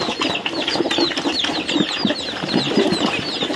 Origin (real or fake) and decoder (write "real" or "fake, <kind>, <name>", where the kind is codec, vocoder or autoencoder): real